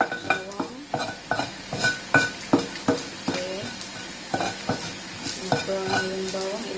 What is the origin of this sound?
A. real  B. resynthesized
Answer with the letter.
A